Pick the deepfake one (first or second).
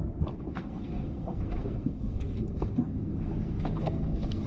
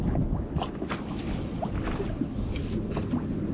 first